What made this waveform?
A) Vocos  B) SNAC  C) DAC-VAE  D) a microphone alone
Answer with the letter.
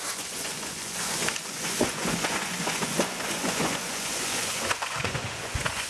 A